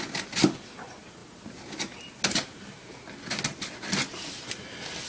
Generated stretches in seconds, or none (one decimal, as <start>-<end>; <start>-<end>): none